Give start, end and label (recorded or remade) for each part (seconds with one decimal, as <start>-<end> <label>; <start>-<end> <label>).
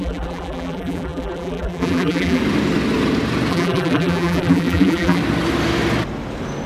0.0-2.4 remade; 2.4-3.5 recorded; 3.5-5.2 remade; 5.2-6.7 recorded